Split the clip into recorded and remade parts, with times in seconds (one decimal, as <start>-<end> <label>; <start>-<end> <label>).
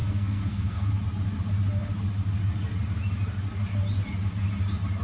0.0-0.9 remade; 0.9-5.0 recorded